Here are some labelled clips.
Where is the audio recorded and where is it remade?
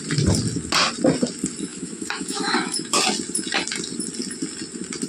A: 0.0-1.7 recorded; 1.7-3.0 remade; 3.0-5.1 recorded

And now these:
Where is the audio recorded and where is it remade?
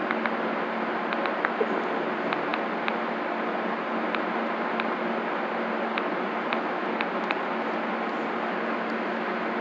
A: 0.0-9.6 recorded